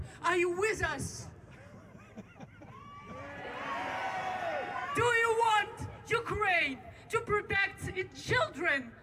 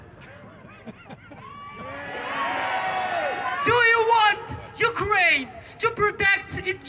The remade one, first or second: first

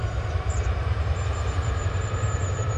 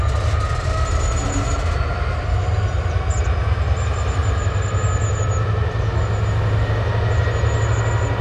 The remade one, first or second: first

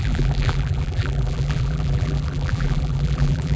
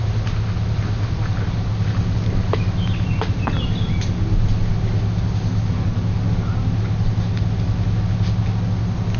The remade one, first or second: first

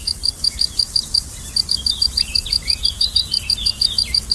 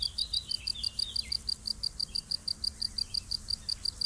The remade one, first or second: first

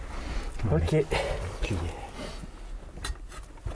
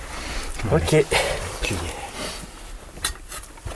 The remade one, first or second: second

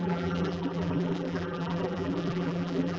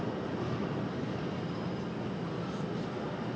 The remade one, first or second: first